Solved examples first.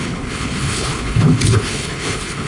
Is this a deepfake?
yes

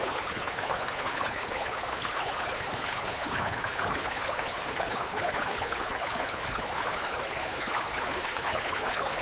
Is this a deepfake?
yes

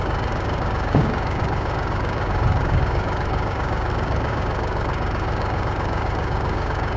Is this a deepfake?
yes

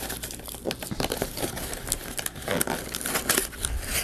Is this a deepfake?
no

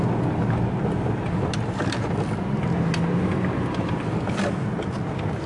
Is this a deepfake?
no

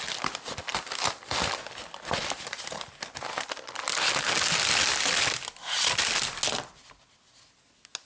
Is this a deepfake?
no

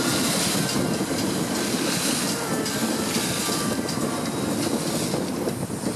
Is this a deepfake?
no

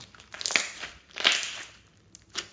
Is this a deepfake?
no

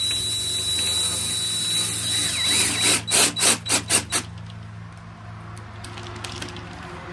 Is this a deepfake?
no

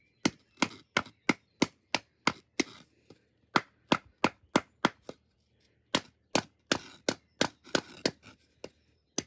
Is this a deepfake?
no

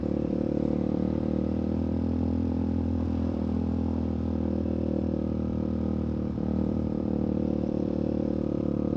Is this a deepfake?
yes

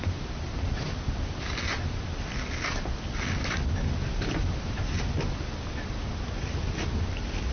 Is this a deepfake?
no